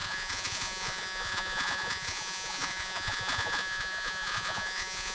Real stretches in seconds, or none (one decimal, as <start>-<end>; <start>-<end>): none